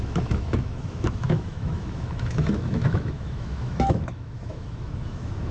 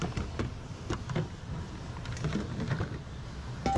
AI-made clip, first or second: first